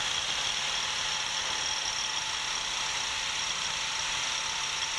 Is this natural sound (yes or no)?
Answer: yes